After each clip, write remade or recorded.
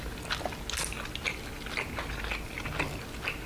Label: recorded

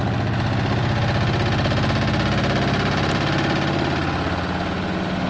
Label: recorded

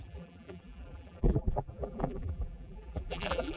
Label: remade